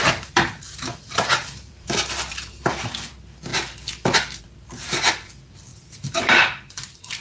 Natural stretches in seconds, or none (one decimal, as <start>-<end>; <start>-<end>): 3.5-4.4